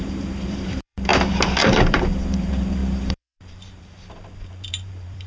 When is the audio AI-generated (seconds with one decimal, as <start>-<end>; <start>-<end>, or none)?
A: 0.0-1.1; 1.6-5.3